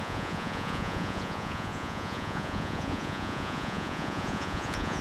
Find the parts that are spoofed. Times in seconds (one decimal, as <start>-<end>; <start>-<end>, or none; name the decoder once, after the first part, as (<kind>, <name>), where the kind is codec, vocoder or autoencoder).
0.0-5.0 (vocoder, Vocos)

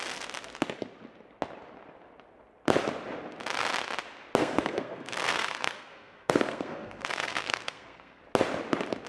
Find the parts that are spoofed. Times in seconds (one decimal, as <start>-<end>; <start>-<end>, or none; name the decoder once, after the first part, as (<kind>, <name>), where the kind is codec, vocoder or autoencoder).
4.4-8.2 (codec, SNAC)

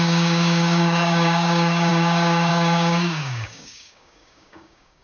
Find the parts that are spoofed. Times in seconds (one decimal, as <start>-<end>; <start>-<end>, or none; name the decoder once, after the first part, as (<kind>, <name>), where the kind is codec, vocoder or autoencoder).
0.0-5.0 (codec, DAC)

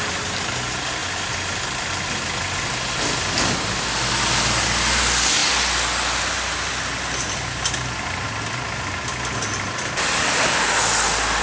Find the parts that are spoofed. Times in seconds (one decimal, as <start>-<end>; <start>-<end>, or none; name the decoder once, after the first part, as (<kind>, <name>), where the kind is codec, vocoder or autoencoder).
none

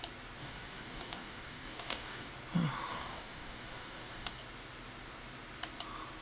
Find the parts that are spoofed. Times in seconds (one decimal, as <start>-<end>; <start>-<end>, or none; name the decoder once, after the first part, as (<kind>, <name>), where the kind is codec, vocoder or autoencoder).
0.4-2.3 (codec, DAC); 2.9-4.4

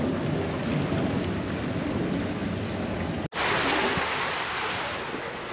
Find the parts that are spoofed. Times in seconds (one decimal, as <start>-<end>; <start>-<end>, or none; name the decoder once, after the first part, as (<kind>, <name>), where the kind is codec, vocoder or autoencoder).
none

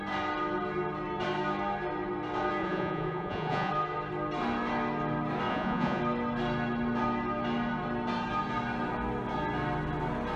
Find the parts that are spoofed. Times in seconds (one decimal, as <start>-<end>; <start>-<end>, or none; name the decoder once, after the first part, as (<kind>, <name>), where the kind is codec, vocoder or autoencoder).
2.6-3.7 (vocoder, Vocos); 5.5-6.0

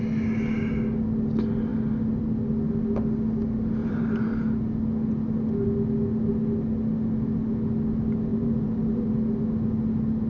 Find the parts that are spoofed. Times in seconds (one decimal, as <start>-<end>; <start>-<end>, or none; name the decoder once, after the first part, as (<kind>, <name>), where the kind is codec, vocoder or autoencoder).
3.8-4.4 (vocoder, BigVGAN v2); 8.3-9.1